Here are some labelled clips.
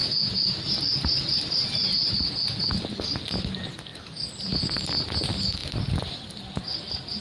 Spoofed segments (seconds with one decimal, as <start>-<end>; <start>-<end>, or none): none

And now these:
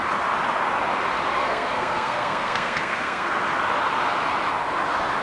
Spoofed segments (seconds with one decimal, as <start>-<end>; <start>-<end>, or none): 1.4-3.4

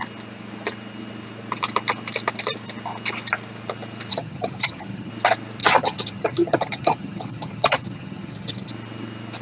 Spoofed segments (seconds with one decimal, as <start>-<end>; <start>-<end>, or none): 4.1-5.1; 5.6-8.7